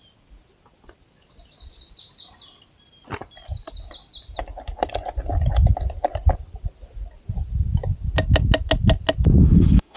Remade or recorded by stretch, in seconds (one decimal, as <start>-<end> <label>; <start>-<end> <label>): 0.0-9.4 recorded; 9.4-10.0 remade